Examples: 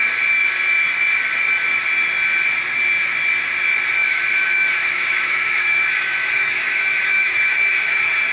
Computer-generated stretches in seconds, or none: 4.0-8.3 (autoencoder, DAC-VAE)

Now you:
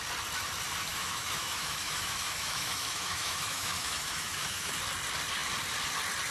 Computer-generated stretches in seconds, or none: 0.9-4.7 (autoencoder, DAC-VAE)

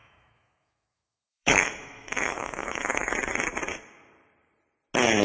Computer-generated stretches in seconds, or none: 0.0-3.1 (autoencoder, DAC-VAE)

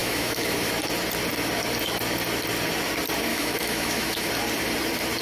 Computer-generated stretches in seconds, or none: 0.0-0.7 (autoencoder, DAC-VAE); 3.3-4.3